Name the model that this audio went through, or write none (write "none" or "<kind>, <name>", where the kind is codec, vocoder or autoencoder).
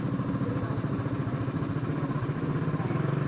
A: none